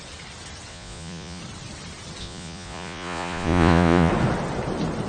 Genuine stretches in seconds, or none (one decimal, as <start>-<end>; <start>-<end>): 0.0-0.7; 1.4-2.2; 4.1-5.1